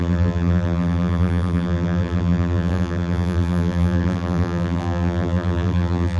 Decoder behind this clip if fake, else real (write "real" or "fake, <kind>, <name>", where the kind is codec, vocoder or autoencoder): fake, vocoder, BigVGAN v2